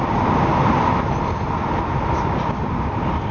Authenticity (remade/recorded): recorded